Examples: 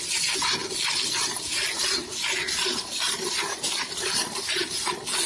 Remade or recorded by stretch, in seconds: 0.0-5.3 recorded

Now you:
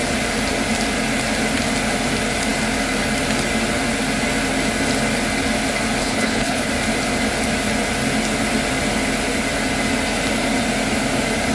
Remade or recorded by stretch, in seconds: 0.0-6.0 recorded; 6.0-6.7 remade; 6.7-11.5 recorded

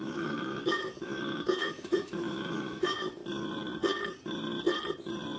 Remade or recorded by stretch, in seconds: 0.0-3.2 remade; 3.2-5.4 recorded